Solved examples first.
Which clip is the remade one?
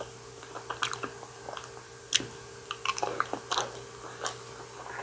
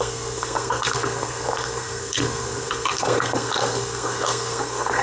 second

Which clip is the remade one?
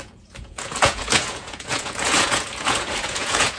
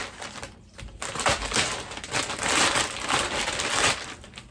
first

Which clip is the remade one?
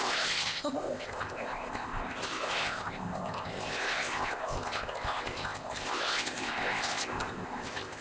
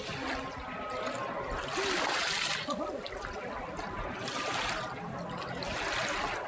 first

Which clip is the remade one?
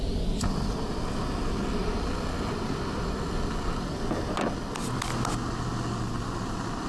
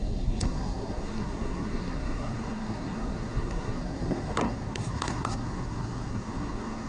second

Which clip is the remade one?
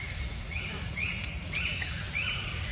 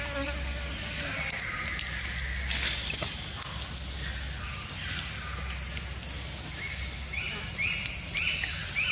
first